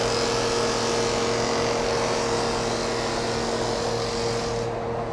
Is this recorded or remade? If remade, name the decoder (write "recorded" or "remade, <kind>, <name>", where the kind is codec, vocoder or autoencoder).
recorded